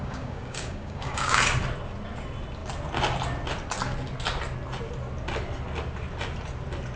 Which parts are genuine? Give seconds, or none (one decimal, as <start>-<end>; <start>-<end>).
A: 1.4-7.0